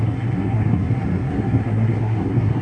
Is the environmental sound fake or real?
fake